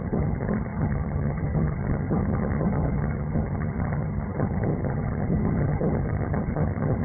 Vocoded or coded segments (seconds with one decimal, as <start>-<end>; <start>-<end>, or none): 0.0-7.0